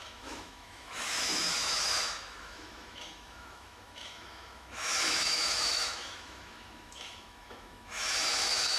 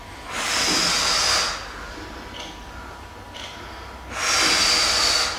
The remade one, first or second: first